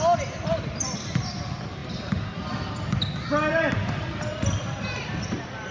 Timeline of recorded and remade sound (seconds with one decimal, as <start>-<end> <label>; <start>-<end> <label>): 0.0-5.7 recorded